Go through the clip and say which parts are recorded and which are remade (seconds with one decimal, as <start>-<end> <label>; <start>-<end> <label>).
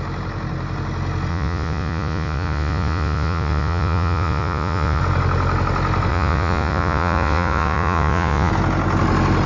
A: 0.0-1.3 recorded; 1.3-5.0 remade; 5.0-6.1 recorded; 6.1-8.5 remade; 8.5-9.5 recorded